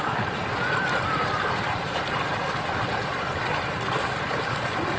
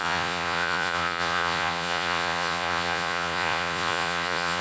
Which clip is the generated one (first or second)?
second